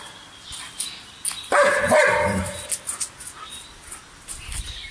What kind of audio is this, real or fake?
real